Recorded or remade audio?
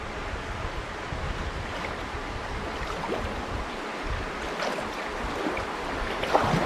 recorded